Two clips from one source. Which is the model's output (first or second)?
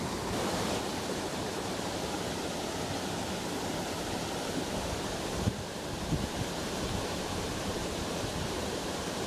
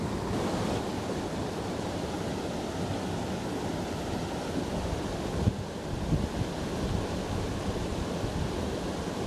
first